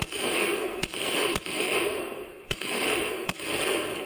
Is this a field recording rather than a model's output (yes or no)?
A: no